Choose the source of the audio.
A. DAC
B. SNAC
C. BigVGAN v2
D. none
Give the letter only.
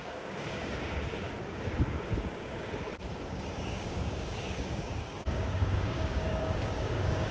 A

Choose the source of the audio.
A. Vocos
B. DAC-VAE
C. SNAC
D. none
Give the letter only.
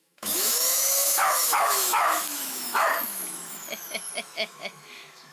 B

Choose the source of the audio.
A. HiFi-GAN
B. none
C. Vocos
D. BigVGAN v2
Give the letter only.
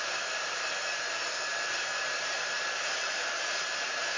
D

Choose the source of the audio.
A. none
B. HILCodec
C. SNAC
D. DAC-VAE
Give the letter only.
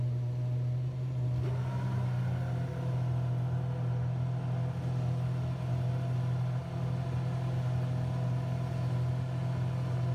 A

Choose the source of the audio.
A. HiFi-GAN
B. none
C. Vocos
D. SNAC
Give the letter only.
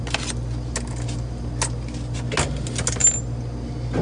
B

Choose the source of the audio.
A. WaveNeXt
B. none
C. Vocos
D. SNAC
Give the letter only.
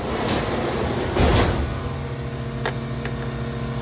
B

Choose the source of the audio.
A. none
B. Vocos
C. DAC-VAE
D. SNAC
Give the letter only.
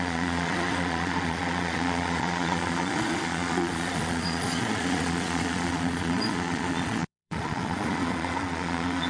B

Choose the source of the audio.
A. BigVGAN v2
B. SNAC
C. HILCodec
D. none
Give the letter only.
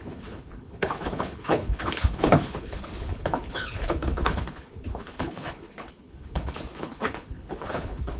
C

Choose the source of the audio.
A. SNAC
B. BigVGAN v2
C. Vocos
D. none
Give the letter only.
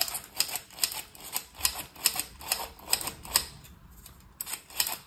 D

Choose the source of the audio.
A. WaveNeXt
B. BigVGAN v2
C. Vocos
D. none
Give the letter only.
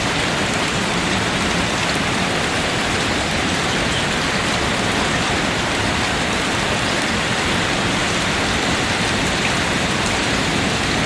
B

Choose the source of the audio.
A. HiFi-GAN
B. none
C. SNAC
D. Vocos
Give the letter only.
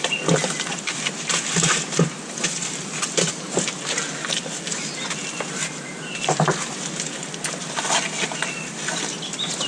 B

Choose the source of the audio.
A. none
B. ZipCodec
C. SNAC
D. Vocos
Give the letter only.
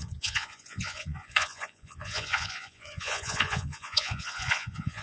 D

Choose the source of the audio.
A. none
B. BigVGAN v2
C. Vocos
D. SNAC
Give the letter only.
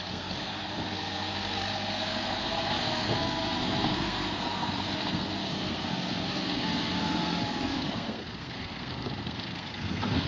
D